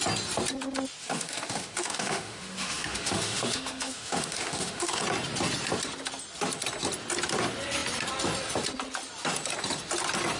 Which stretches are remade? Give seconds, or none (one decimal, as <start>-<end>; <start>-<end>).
1.0-5.0